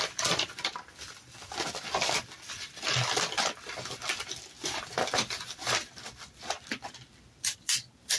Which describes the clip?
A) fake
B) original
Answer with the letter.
A